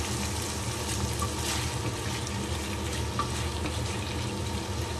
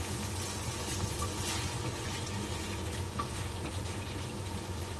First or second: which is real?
first